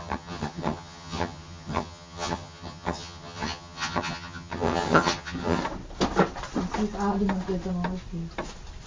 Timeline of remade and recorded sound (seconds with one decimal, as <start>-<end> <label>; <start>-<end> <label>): 0.0-5.6 remade; 5.6-8.9 recorded